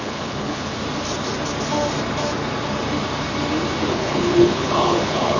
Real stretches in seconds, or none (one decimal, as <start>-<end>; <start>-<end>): 0.7-3.9